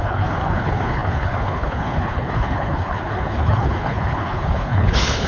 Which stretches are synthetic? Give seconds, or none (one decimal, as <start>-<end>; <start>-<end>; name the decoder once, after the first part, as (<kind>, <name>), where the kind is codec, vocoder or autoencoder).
0.0-5.3 (codec, HILCodec)